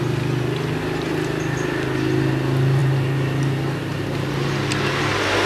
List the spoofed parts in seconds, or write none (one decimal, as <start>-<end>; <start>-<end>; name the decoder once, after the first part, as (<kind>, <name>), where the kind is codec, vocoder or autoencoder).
none

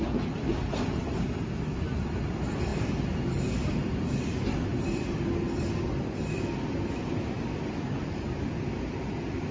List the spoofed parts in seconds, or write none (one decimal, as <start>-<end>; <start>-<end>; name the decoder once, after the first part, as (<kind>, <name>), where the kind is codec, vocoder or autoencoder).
none